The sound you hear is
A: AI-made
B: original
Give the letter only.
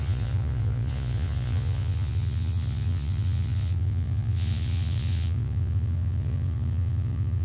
A